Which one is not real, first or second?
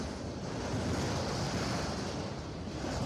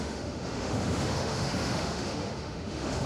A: second